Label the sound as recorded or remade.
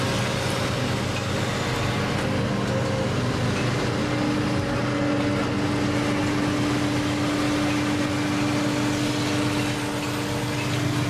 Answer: recorded